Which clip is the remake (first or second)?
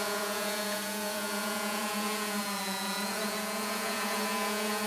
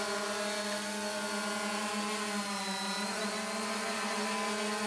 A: first